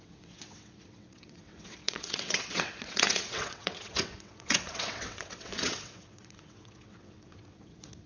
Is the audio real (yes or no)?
no